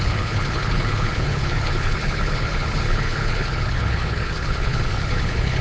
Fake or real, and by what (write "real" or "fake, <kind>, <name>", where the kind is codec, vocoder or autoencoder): fake, codec, HILCodec